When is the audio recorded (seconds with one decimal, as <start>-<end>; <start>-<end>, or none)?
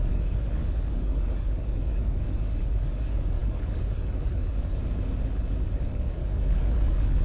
4.8-5.7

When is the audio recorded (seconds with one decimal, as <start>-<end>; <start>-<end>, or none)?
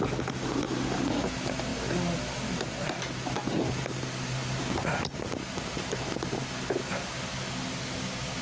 0.0-8.4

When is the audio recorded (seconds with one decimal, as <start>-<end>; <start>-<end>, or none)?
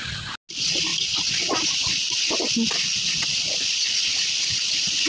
0.0-5.1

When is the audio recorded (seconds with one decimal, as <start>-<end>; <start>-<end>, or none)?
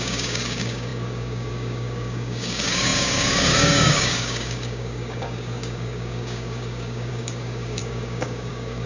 none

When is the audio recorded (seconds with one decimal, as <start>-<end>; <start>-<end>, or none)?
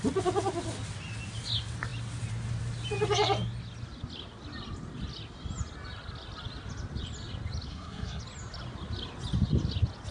0.0-7.7; 8.2-10.1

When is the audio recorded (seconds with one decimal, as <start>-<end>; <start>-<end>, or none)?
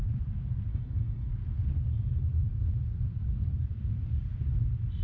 0.0-0.7; 1.3-5.0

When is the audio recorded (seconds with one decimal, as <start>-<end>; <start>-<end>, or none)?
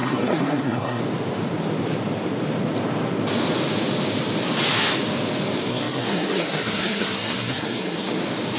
1.0-5.7; 8.2-8.6